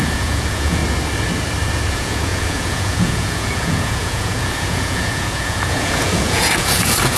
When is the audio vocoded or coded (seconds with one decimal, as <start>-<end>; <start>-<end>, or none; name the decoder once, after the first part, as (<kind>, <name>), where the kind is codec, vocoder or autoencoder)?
0.0-0.8 (vocoder, Vocos); 1.9-7.2